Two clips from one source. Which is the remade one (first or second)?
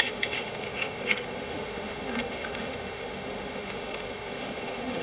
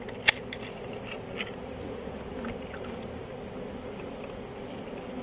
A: first